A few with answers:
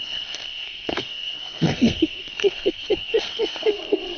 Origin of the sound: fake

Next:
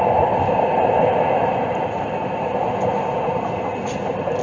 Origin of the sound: real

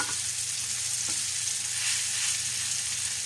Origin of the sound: real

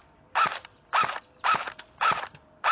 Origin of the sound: real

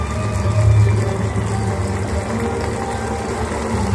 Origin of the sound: real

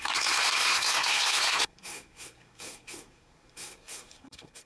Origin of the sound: fake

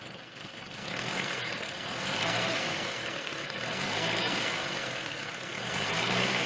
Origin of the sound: fake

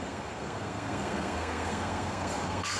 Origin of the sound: fake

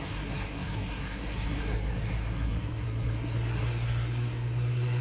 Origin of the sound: fake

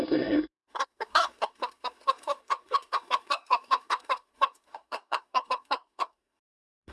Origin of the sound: fake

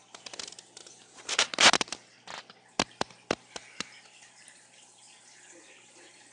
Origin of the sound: real